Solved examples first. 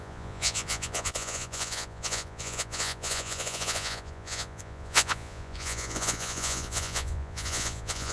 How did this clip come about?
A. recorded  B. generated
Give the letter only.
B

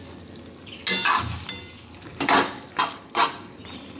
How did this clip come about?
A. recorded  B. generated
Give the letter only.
A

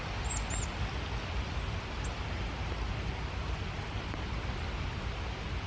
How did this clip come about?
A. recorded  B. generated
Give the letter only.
A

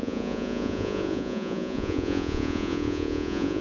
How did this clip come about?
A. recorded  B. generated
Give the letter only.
B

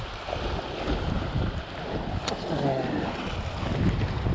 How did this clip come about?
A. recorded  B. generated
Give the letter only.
A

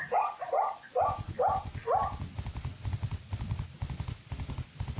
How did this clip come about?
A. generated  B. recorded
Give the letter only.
B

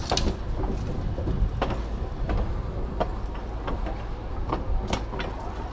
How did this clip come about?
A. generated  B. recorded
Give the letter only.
B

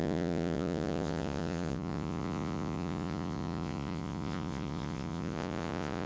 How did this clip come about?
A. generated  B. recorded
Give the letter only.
A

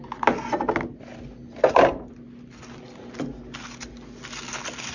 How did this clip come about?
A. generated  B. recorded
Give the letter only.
B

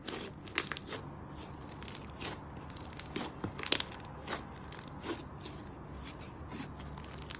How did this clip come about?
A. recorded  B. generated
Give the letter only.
A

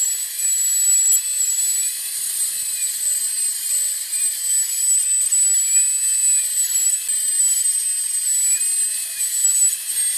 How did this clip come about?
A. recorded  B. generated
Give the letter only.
A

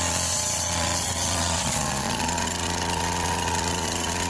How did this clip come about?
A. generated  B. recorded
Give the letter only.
A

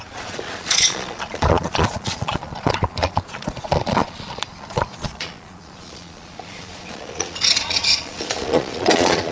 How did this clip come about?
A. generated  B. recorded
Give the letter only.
A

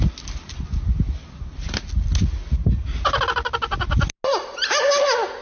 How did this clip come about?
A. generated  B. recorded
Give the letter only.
B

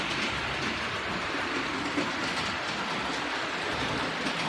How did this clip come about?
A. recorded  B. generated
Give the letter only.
A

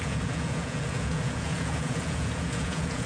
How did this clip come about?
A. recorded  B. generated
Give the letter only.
B